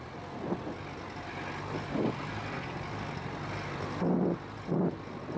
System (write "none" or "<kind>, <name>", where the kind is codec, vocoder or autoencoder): none